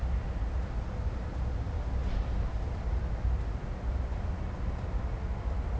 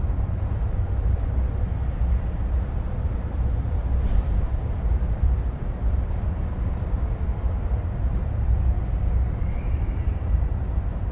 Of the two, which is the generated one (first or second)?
second